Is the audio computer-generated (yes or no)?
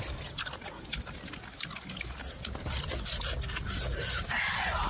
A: no